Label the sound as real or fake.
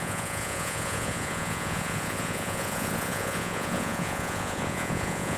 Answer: fake